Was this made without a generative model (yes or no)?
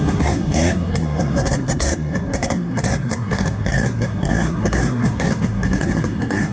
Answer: no